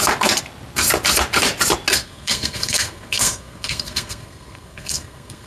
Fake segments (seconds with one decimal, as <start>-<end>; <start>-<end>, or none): 1.9-5.5